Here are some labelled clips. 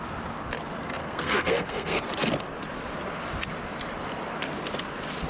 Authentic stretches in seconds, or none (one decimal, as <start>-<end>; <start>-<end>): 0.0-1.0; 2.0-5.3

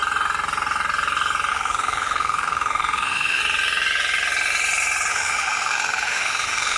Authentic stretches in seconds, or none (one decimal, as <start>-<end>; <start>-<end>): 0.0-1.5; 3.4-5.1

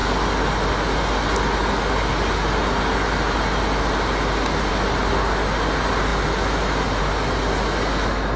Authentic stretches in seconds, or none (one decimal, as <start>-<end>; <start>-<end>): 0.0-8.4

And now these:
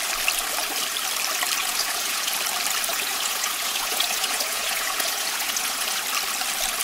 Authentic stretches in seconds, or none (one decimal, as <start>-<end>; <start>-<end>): 0.0-1.6; 2.3-2.9; 6.0-6.8

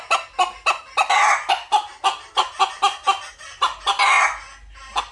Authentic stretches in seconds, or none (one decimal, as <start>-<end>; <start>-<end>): 0.0-5.1